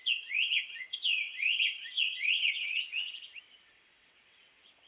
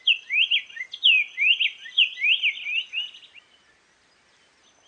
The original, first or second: second